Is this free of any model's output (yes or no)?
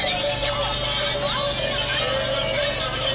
yes